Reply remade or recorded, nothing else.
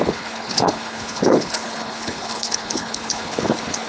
remade